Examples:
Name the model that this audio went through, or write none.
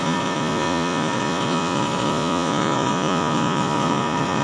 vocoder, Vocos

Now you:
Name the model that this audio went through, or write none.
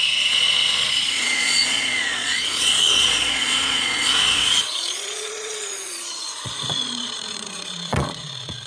vocoder, Vocos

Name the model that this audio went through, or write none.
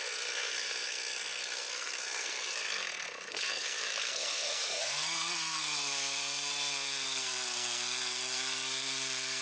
codec, SNAC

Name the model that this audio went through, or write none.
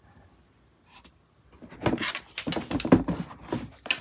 none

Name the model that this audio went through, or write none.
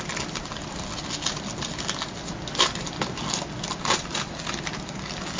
none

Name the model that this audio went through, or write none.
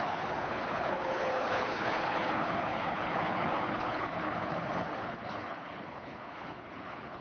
codec, HILCodec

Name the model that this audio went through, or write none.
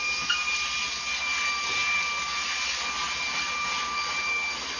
none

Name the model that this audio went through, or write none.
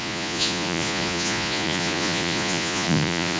vocoder, Vocos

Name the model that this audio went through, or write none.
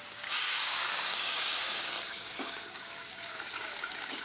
codec, DAC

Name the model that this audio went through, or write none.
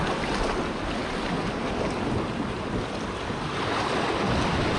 none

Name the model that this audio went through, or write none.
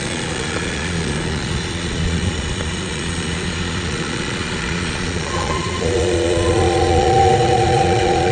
vocoder, Vocos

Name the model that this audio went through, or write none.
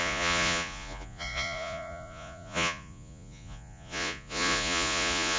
vocoder, Vocos